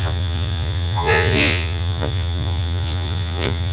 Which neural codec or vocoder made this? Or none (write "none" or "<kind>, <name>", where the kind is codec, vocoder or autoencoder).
vocoder, Vocos